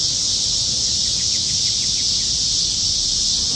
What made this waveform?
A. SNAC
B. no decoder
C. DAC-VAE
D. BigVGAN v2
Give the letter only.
B